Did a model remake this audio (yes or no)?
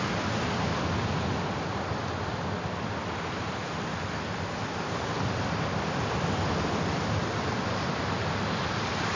no